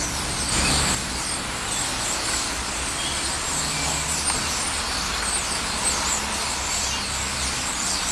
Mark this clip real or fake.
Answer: real